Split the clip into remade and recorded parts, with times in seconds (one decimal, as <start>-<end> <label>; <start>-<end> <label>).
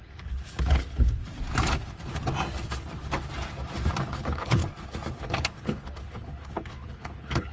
0.0-1.2 remade; 1.2-4.0 recorded; 4.0-4.6 remade; 4.6-5.2 recorded; 5.2-7.5 remade